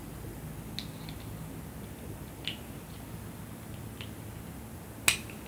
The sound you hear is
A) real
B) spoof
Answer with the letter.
A